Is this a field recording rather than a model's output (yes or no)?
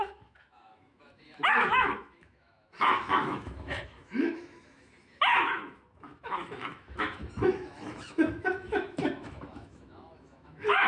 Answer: no